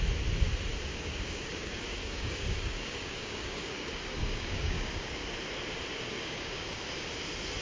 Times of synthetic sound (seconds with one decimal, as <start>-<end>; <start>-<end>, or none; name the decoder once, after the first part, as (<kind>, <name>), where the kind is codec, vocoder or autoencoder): 0.7-5.3 (codec, DAC); 5.9-6.8